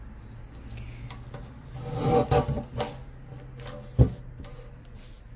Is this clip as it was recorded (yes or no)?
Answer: yes